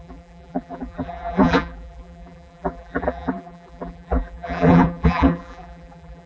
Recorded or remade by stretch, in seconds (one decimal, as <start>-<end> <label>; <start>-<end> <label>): 0.0-6.3 remade